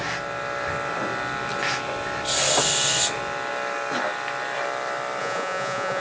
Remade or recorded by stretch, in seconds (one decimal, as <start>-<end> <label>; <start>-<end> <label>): 0.0-5.2 recorded; 5.2-6.0 remade